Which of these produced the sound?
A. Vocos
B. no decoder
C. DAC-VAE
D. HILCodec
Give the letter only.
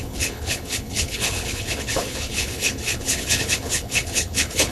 D